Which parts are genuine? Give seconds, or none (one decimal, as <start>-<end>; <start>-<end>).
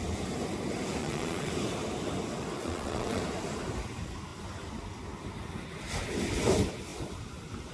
0.0-1.0; 1.5-2.6; 3.2-7.7